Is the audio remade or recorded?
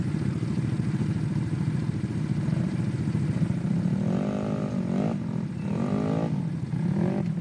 recorded